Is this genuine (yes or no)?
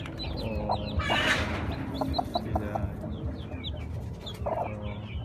yes